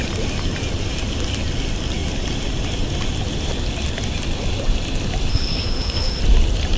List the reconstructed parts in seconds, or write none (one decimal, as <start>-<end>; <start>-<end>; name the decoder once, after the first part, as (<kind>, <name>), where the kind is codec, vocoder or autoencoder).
5.3-6.2 (codec, SNAC)